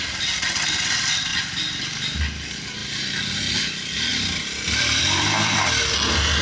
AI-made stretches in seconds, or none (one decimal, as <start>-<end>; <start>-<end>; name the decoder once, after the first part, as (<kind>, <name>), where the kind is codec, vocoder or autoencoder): 2.8-3.3 (vocoder, BigVGAN v2); 4.1-5.8